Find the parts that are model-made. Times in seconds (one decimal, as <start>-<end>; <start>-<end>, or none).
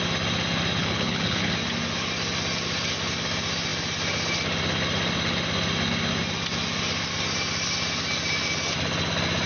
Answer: 0.8-1.5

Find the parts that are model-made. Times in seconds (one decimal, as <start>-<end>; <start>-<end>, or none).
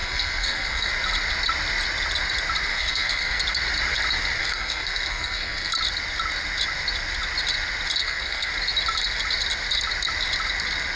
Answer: 0.0-0.9; 2.7-3.4; 4.4-5.7; 8.0-8.5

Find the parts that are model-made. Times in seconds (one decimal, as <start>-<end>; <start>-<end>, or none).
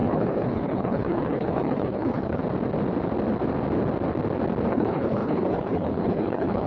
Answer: 0.0-2.4; 4.7-6.7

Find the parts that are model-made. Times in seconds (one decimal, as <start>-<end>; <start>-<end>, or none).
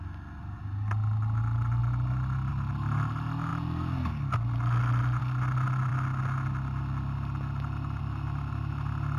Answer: none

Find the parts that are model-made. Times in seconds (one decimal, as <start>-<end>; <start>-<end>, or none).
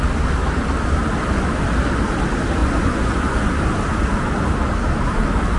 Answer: 2.6-3.5